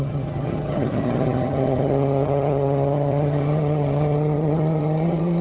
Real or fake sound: fake